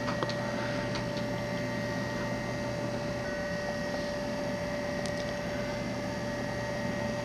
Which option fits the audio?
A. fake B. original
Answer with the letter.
B